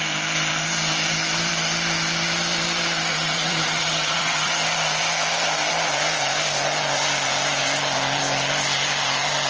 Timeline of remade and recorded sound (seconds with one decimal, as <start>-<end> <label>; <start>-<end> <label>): 0.0-3.1 recorded; 3.1-4.5 remade; 4.5-9.5 recorded